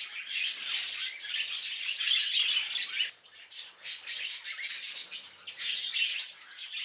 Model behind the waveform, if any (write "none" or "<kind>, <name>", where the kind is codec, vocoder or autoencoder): none